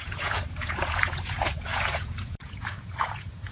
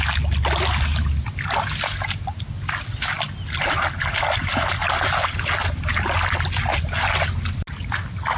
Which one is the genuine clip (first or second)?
second